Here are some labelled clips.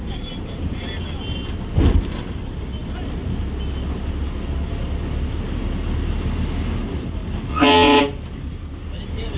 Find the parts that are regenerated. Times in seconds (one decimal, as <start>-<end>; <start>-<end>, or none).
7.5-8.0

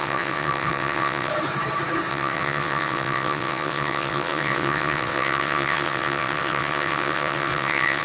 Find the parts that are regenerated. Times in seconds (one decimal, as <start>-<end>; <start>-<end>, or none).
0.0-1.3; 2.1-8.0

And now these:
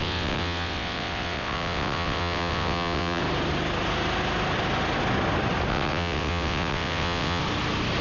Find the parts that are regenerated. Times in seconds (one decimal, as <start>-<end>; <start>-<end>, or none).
0.0-3.2; 5.7-7.4

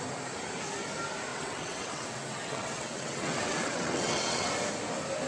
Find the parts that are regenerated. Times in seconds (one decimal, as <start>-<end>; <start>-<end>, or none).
1.3-4.5

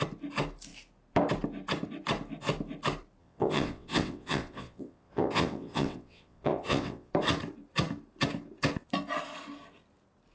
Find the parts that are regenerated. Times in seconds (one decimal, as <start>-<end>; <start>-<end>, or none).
3.2-7.1